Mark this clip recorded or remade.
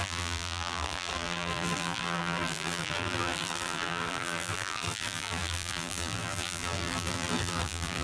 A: remade